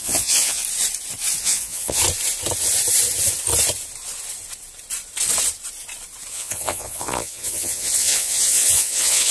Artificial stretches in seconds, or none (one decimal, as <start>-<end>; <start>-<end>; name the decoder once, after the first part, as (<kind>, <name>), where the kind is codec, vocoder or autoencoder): 0.0-0.6 (vocoder, Vocos); 1.4-2.0; 6.3-9.3

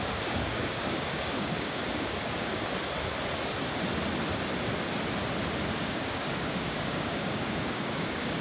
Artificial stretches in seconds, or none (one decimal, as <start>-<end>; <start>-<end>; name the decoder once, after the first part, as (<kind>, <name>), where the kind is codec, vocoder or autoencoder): 0.0-2.8 (codec, DAC); 5.8-8.4

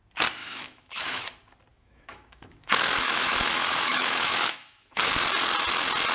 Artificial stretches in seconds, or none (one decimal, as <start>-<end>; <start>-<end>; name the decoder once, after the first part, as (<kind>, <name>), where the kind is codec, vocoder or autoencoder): 0.4-1.2 (autoencoder, DAC-VAE); 1.7-5.1

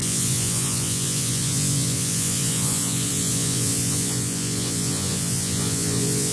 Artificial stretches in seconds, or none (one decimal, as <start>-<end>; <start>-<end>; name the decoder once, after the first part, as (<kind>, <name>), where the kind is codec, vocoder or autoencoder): 0.0-6.3 (vocoder, Vocos)

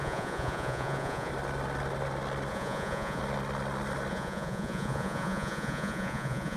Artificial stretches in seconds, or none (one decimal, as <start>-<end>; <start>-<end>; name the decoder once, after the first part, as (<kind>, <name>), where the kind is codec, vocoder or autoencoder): 0.0-1.3 (vocoder, Vocos); 2.5-3.2; 4.1-6.6